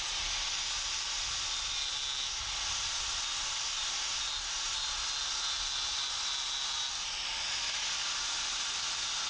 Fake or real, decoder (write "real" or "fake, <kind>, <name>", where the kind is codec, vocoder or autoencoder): real